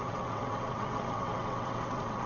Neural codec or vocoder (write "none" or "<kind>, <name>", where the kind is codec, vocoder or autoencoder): vocoder, WaveNeXt